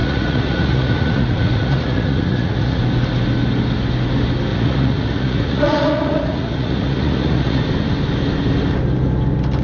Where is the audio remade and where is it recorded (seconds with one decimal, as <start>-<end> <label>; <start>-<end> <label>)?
0.0-2.8 remade; 2.8-4.5 recorded; 4.5-7.6 remade; 7.6-9.6 recorded